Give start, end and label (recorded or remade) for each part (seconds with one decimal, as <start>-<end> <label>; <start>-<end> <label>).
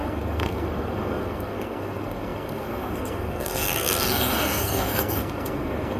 0.0-6.0 remade